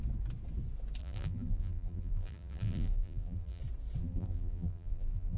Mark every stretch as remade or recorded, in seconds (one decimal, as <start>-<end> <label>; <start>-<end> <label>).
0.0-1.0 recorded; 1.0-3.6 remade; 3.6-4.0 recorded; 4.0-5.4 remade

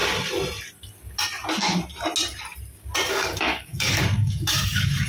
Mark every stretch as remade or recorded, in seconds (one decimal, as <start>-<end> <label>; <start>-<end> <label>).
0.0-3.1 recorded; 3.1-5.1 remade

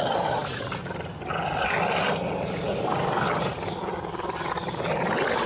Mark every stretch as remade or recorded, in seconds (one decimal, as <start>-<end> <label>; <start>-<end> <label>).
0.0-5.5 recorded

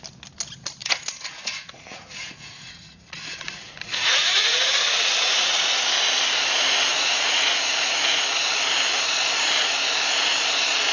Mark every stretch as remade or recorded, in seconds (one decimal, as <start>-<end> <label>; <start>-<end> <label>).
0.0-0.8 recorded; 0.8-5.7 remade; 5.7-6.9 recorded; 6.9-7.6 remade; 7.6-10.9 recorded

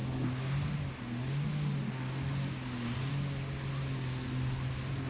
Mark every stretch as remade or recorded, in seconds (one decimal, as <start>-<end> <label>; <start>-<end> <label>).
0.0-5.1 recorded

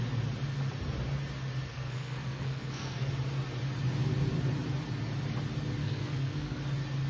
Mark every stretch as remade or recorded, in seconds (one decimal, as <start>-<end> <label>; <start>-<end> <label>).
0.0-1.7 recorded; 1.7-3.1 remade; 3.1-5.8 recorded; 5.8-6.6 remade; 6.6-7.1 recorded

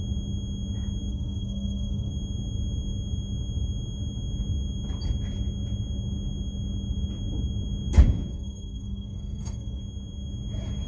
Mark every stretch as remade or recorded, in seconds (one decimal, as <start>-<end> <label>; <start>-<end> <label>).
0.0-1.1 recorded; 1.1-2.1 remade; 2.1-8.3 recorded; 8.3-9.8 remade; 9.8-10.9 recorded